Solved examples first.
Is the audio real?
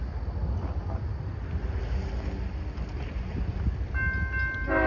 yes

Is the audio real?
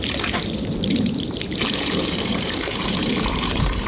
no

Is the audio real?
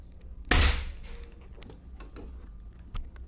yes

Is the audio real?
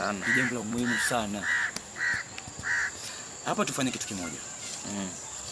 no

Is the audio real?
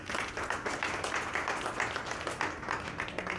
yes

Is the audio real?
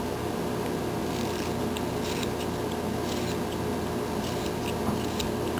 yes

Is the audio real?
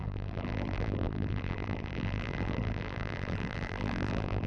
no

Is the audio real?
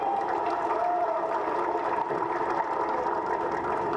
no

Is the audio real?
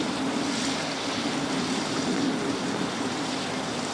yes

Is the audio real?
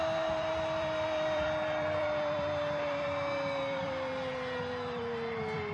no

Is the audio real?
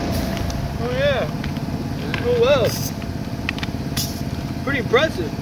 yes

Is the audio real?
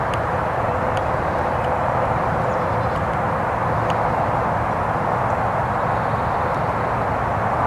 yes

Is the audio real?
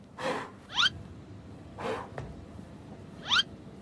no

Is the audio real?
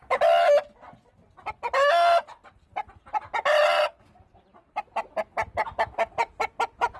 yes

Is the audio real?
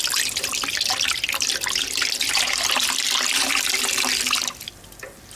no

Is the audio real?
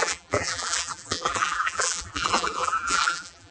no